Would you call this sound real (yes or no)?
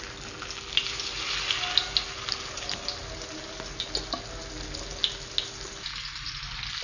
yes